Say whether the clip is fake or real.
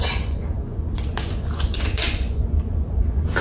fake